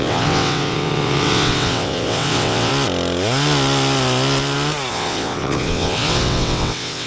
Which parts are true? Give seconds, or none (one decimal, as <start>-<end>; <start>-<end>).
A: 2.7-4.9